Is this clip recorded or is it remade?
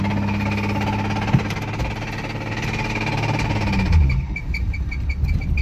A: recorded